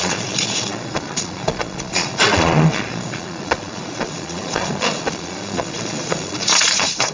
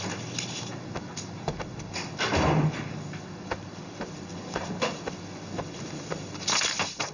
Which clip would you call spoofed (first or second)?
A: first